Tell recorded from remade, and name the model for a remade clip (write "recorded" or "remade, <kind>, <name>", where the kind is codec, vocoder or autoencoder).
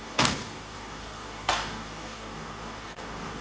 remade, codec, DAC